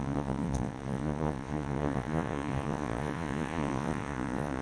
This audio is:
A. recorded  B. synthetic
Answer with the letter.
B